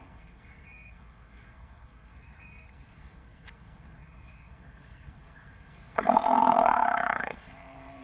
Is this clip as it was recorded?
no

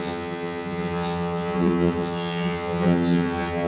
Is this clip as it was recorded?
no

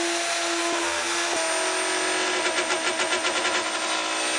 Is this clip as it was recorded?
yes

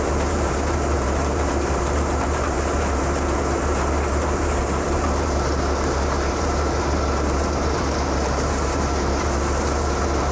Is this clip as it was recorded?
no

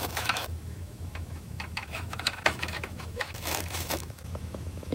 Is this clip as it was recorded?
no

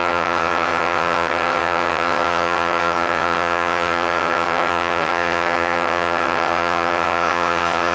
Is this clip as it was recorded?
no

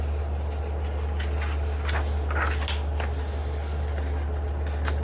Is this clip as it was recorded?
yes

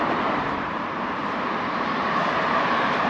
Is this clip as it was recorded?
no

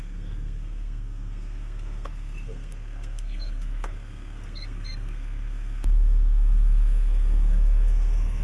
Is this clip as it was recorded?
no